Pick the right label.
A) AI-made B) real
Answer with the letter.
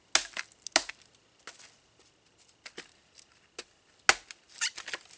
B